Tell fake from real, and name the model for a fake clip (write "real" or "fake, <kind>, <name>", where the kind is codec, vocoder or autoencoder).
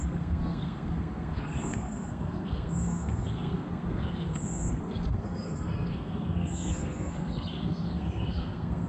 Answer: fake, codec, SNAC